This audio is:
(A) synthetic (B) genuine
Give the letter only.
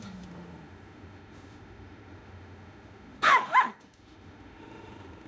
A